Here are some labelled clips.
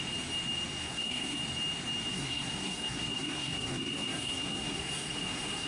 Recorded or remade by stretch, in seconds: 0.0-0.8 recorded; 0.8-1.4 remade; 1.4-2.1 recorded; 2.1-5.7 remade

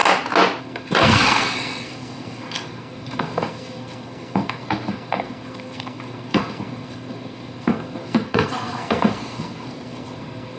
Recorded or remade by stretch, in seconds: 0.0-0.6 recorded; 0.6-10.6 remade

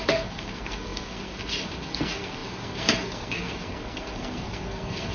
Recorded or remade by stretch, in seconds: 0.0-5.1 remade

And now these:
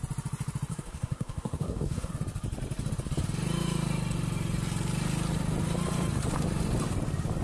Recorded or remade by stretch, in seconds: 0.0-0.7 recorded; 0.7-2.1 remade; 2.1-7.4 recorded

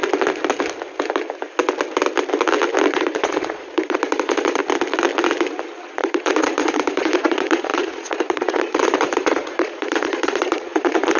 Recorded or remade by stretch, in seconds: 0.0-2.9 recorded; 2.9-4.6 remade; 4.6-5.8 recorded; 5.8-11.2 remade